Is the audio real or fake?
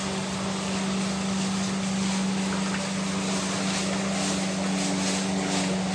real